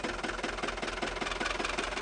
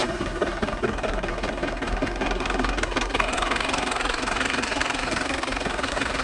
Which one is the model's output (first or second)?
second